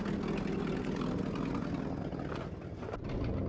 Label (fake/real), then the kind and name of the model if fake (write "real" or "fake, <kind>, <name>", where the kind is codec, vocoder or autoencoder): real